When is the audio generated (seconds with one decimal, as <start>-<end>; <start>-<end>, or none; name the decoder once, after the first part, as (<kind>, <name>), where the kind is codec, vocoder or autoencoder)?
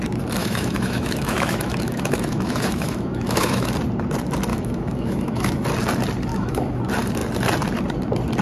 0.4-3.7 (autoencoder, DAC-VAE); 4.5-5.5; 6.3-6.8